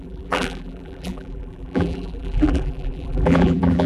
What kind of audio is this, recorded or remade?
remade